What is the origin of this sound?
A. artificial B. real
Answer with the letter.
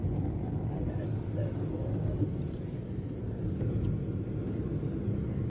B